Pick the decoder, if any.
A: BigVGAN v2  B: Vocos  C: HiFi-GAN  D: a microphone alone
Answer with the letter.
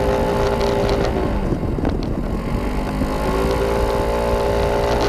D